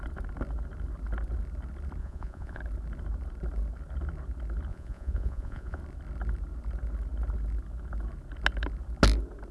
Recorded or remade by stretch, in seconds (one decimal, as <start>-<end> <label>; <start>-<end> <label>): 0.0-2.0 recorded; 2.0-2.6 remade; 2.6-4.7 recorded; 4.7-5.8 remade; 5.8-9.5 recorded